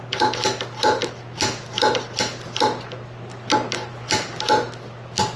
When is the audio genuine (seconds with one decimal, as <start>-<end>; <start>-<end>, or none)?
0.0-5.4